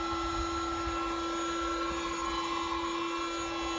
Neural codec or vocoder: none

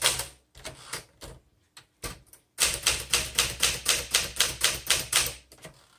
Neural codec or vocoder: none